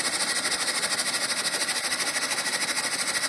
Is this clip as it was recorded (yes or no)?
yes